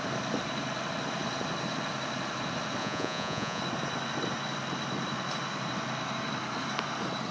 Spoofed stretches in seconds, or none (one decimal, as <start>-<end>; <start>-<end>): 2.8-3.6

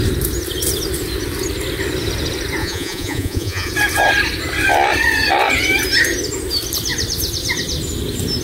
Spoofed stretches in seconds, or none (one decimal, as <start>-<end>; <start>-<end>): 2.6-3.7

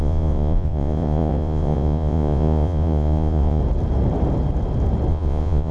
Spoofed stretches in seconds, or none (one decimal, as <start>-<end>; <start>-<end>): 0.0-3.6; 5.1-5.7

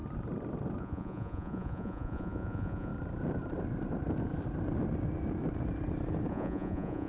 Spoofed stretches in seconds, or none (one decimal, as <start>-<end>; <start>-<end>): 0.8-2.9; 6.3-7.1

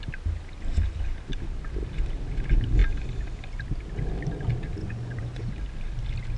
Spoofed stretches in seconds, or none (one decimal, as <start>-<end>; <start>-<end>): 4.8-5.5

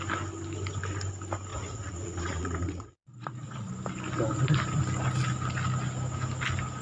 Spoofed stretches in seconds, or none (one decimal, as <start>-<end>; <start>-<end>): 1.5-3.7